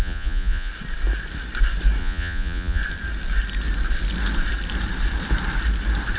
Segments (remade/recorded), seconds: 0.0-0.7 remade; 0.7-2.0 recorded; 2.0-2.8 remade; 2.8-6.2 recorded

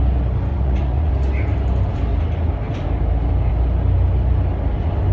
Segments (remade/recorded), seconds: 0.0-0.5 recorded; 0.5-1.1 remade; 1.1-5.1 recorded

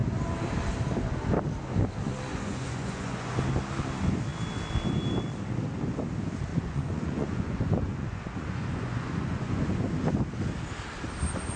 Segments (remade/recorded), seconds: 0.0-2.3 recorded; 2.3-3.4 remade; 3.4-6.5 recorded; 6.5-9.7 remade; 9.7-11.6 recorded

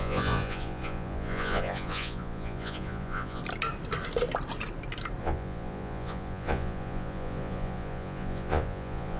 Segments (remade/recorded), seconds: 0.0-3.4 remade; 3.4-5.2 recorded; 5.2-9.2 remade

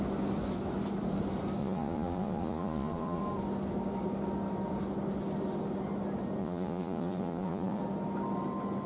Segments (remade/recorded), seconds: 0.0-1.6 recorded; 1.6-3.2 remade; 3.2-6.4 recorded; 6.4-7.8 remade; 7.8-8.9 recorded

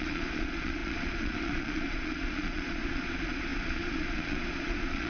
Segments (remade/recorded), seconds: 0.0-5.1 remade

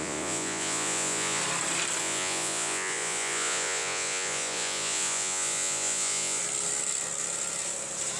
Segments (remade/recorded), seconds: 0.0-1.4 remade; 1.4-2.0 recorded; 2.0-6.4 remade; 6.4-8.2 recorded